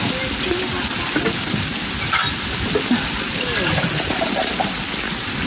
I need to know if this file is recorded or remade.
recorded